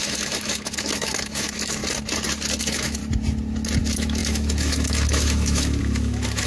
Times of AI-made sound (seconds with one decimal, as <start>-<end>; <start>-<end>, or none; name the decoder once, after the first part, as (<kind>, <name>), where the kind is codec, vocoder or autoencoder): 0.0-1.8 (autoencoder, DAC-VAE); 2.6-3.0; 3.8-6.5